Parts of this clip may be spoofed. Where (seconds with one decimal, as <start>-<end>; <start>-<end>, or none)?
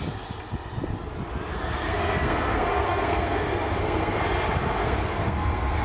1.5-4.2; 4.8-5.8